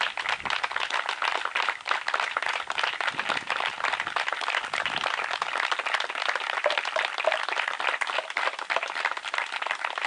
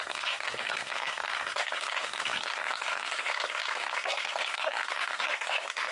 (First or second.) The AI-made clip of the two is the second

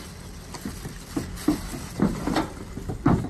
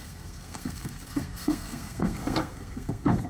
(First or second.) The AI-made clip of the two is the second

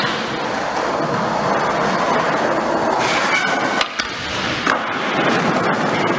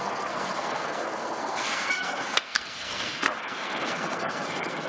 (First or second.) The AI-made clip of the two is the second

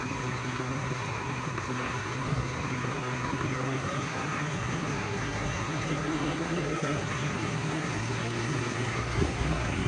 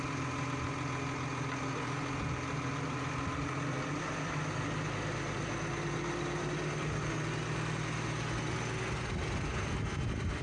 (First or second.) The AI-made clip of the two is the first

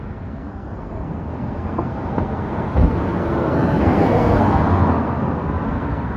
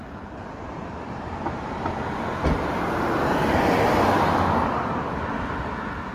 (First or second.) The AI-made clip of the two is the first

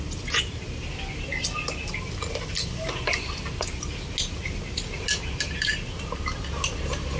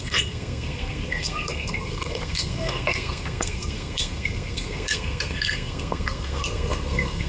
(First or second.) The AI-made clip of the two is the second